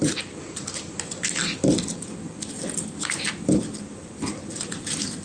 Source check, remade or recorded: recorded